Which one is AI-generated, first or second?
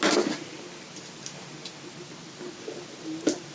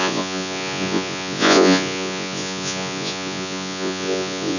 second